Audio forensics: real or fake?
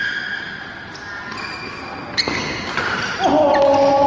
real